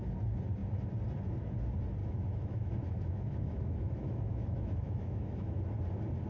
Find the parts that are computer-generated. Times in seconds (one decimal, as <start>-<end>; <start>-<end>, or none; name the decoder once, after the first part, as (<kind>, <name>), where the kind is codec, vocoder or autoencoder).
2.0-5.6 (autoencoder, DAC-VAE)